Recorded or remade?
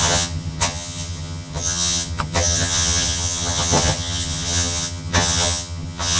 remade